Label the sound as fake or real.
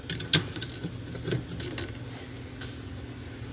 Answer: real